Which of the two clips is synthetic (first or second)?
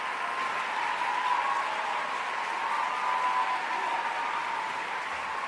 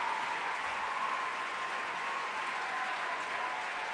second